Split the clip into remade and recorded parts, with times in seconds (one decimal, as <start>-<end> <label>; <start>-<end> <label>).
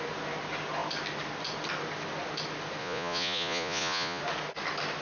0.0-2.8 recorded; 2.8-4.2 remade; 4.2-5.0 recorded